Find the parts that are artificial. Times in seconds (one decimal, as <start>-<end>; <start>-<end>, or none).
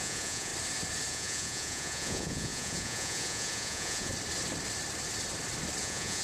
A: 0.0-0.5; 1.1-4.1; 5.8-6.2